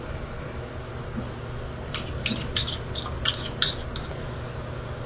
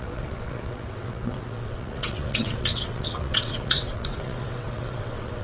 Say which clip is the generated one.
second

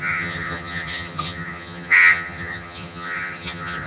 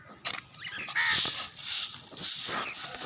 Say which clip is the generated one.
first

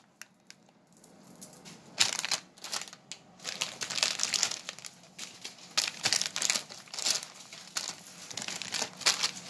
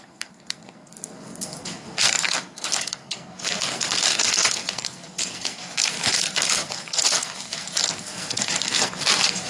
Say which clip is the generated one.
second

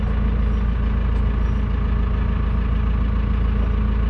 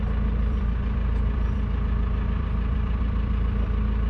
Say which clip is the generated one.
second